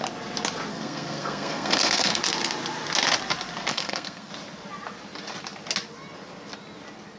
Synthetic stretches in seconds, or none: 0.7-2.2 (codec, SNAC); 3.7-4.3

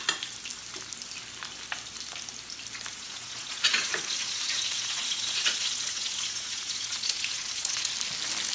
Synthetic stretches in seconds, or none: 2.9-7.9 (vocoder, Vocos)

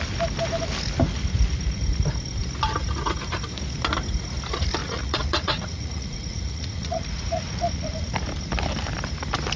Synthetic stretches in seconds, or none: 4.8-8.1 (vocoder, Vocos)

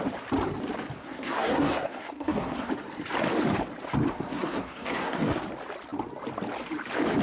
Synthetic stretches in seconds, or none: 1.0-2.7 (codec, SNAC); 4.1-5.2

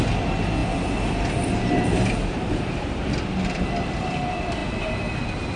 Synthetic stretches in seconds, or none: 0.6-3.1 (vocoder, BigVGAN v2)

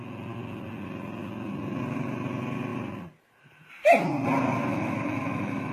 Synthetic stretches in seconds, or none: 4.7-5.7 (autoencoder, DAC-VAE)

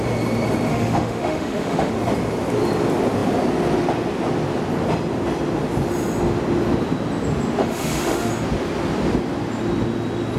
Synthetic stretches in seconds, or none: 0.7-1.9 (autoencoder, DAC-VAE); 7.6-8.3

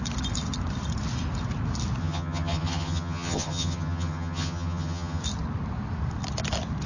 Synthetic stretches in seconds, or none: 2.0-5.2 (vocoder, HiFi-GAN)